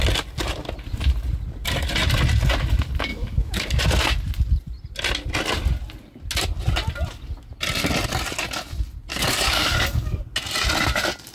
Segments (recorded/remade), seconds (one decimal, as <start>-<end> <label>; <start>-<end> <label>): 0.0-3.1 recorded; 3.1-3.8 remade; 3.8-9.1 recorded; 9.1-10.2 remade; 10.2-11.3 recorded